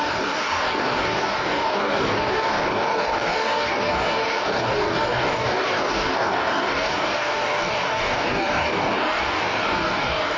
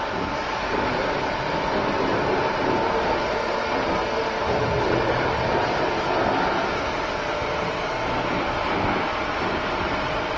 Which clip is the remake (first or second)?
first